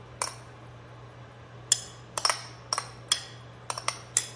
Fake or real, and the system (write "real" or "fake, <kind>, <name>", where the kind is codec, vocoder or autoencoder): real